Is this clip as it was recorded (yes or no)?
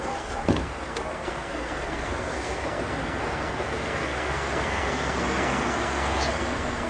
no